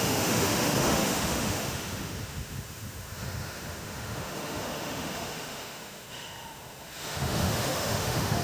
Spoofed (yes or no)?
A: yes